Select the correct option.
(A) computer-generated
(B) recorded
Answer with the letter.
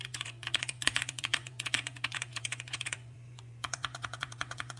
A